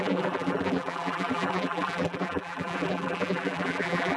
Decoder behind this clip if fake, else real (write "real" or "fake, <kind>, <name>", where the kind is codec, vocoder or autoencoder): fake, vocoder, BigVGAN v2